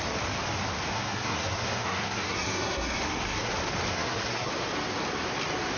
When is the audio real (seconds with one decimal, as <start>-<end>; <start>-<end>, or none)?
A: 0.0-0.9; 3.5-3.9; 4.5-5.8